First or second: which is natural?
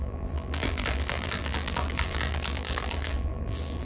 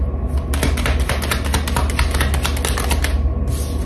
second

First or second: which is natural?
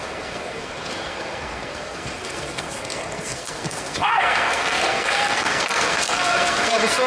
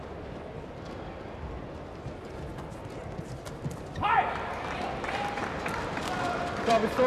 second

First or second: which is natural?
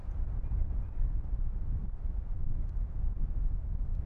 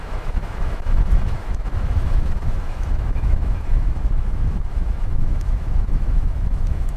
first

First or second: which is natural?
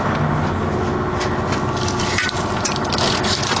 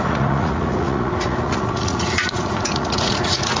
first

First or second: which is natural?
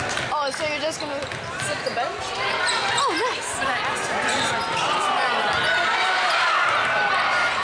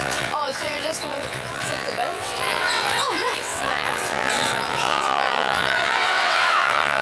first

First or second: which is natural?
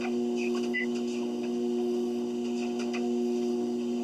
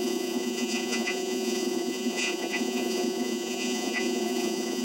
first